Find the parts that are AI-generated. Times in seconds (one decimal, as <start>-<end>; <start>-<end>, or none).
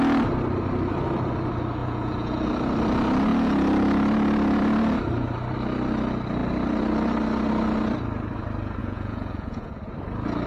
1.8-2.5; 8.8-9.7